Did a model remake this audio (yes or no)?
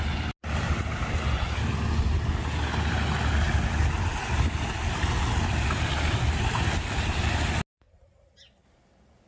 no